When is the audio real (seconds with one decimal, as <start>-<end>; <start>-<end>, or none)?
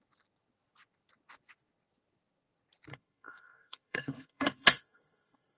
0.0-2.9